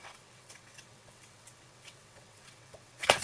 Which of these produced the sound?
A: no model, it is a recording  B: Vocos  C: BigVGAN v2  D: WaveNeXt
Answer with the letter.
D